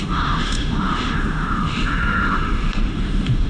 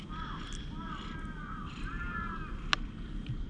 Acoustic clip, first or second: second